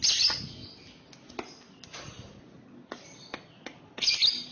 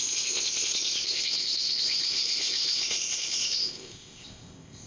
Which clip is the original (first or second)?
first